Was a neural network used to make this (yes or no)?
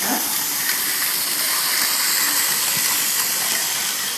no